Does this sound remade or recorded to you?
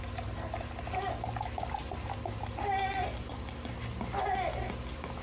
recorded